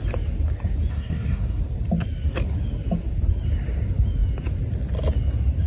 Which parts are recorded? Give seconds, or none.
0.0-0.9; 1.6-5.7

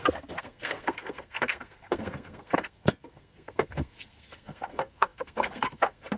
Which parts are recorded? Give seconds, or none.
none

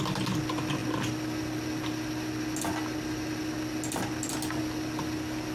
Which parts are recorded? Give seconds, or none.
0.0-5.5

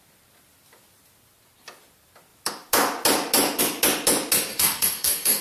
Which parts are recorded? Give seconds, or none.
0.0-4.5